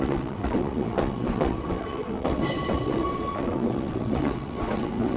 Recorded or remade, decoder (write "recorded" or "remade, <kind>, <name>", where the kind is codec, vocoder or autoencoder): remade, vocoder, WaveNeXt